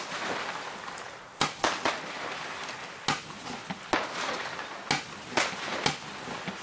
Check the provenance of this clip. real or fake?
real